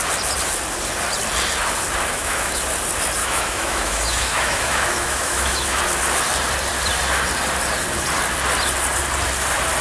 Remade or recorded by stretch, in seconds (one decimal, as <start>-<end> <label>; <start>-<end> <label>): 0.0-2.1 recorded; 2.1-2.6 remade; 2.6-3.2 recorded; 3.2-5.8 remade; 5.8-9.8 recorded